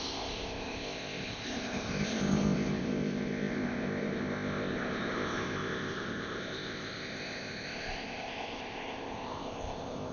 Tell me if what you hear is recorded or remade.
remade